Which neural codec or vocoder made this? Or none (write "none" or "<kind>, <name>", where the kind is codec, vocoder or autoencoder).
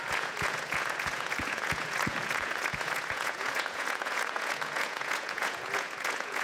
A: vocoder, Vocos